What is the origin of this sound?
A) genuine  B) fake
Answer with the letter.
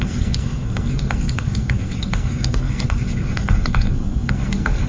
B